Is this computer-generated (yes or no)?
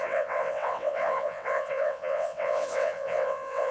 yes